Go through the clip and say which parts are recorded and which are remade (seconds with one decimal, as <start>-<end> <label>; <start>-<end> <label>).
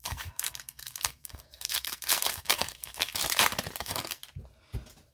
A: 0.0-3.2 remade; 3.2-3.8 recorded; 3.8-4.2 remade; 4.2-5.1 recorded